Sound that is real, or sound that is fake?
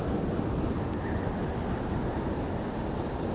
real